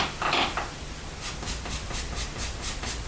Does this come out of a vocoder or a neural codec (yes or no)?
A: no